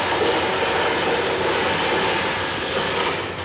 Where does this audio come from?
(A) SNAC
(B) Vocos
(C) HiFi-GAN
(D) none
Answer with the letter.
D